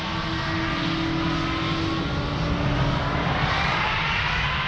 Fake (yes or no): no